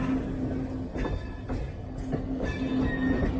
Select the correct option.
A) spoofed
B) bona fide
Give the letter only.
B